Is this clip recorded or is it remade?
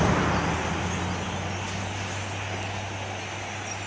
recorded